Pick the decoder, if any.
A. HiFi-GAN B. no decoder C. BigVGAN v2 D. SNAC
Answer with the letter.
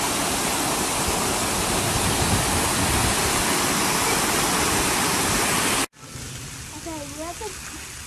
B